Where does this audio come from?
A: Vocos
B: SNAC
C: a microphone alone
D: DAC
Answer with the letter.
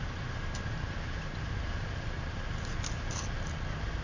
C